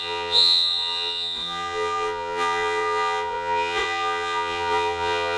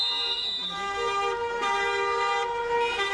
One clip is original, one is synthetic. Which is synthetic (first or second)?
first